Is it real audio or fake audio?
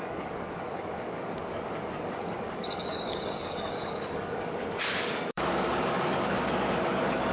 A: fake